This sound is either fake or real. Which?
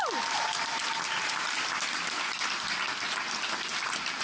real